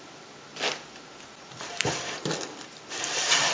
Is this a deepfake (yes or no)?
no